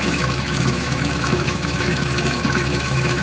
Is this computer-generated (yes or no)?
yes